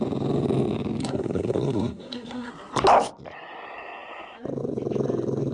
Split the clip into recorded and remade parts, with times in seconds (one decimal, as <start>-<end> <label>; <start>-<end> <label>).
0.0-1.0 recorded; 1.0-2.5 remade; 2.5-5.5 recorded